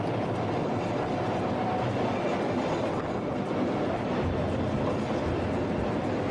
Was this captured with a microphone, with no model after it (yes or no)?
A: yes